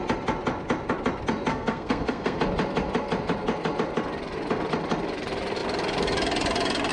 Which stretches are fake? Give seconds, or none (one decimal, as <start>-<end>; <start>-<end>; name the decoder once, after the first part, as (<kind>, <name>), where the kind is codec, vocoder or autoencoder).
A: 1.5-2.4 (codec, SNAC)